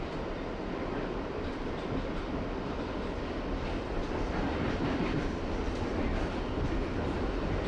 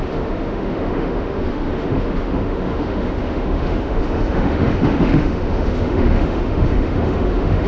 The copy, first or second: second